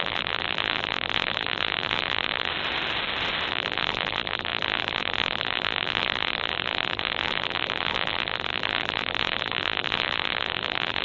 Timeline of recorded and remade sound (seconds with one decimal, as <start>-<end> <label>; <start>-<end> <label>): 0.0-2.5 remade; 2.5-3.5 recorded; 3.5-11.0 remade